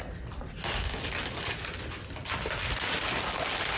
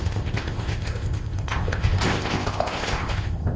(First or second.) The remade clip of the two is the second